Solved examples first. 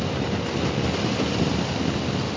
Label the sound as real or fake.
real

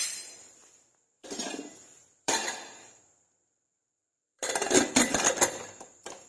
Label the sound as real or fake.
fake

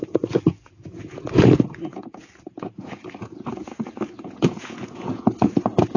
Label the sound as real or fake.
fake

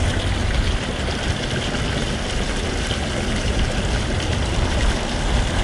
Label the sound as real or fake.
real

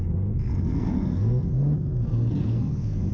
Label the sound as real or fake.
fake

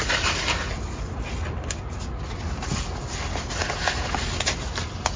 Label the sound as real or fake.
real